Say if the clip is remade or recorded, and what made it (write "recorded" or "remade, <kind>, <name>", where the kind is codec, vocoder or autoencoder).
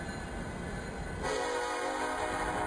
recorded